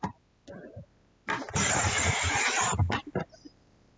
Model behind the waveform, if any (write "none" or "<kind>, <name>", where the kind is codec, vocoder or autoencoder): none